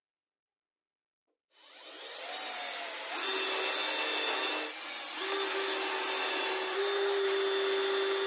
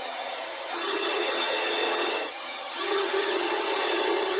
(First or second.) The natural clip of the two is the first